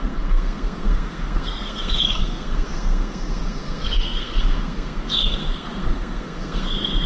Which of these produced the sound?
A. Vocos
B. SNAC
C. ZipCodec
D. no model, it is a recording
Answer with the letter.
B